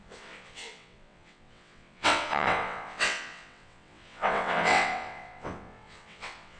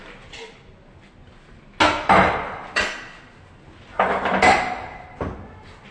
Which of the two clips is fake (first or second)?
first